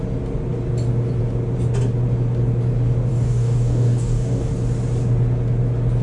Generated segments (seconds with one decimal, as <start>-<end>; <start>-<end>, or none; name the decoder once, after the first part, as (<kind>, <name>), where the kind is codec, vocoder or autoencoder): 3.1-4.5 (codec, DAC)